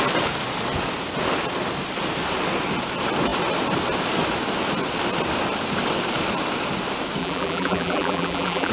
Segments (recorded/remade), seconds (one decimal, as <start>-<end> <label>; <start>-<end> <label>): 0.0-7.2 recorded; 7.2-8.7 remade